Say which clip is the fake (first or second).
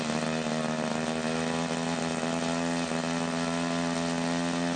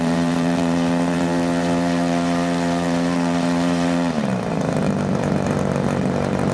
second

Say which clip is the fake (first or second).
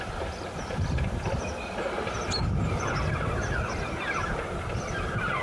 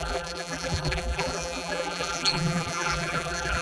second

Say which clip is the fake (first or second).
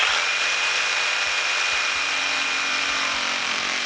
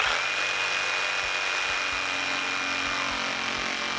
first